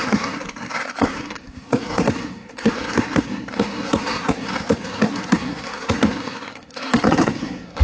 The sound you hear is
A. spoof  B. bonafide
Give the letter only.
A